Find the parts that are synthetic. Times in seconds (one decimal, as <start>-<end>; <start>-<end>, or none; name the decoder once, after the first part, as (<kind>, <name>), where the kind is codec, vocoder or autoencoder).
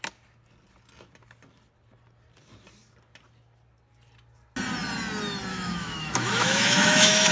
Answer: 5.5-7.3 (autoencoder, DAC-VAE)